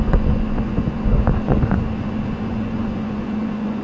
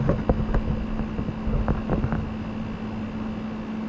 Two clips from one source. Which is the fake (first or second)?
first